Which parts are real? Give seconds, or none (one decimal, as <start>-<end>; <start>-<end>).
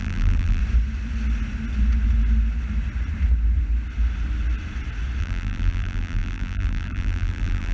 0.6-5.2